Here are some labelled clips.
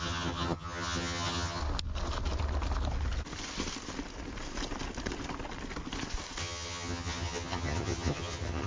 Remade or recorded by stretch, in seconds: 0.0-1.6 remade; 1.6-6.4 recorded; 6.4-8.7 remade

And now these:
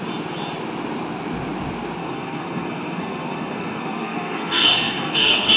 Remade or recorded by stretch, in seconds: 0.0-2.0 recorded; 2.0-5.6 remade